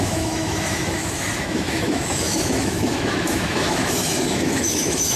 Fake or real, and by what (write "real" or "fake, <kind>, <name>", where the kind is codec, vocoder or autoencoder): fake, autoencoder, DAC-VAE